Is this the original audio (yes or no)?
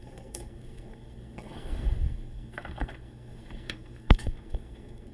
no